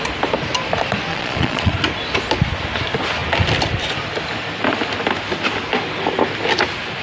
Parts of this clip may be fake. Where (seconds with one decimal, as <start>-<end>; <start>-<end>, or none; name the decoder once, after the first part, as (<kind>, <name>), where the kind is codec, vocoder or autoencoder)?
1.1-1.7 (vocoder, Vocos)